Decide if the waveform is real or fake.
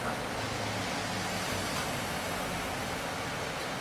real